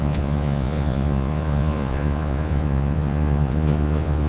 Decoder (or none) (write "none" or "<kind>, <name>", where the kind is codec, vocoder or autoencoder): vocoder, Vocos